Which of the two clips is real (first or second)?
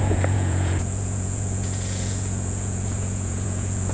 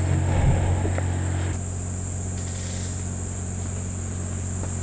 second